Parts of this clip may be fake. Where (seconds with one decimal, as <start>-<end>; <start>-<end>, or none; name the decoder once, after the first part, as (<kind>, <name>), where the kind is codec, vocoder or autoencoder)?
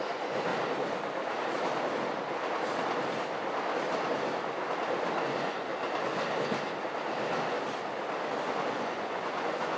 0.0-0.5 (vocoder, Vocos); 5.2-5.7; 8.7-9.8